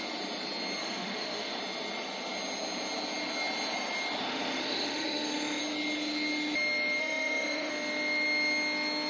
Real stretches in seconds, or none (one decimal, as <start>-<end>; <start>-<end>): 0.0-0.8; 1.6-4.2; 5.6-7.0; 7.7-9.1